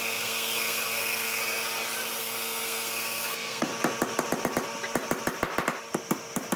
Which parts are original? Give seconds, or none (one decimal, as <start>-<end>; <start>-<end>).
1.4-2.2; 3.7-6.6